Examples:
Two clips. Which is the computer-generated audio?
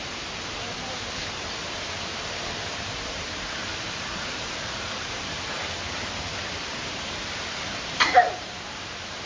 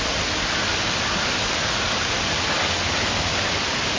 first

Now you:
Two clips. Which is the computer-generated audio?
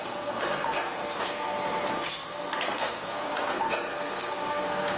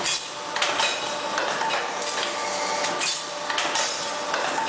first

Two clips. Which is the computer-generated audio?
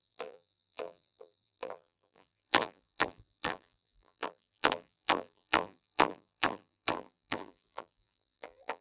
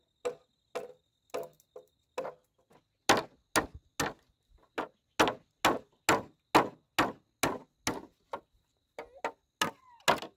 first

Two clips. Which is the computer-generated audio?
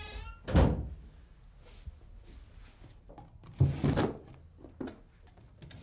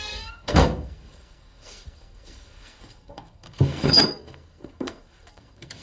second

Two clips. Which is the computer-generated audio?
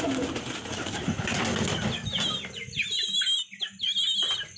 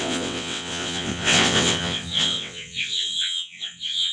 second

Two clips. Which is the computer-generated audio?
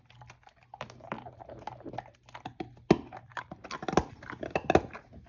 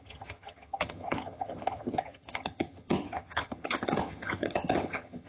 second